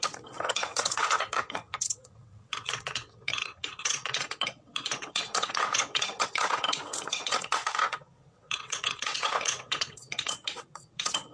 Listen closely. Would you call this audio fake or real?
fake